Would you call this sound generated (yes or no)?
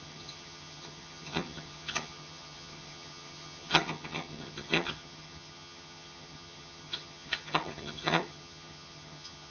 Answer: yes